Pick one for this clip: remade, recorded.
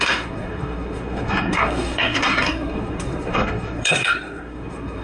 remade